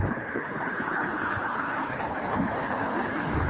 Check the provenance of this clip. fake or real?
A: fake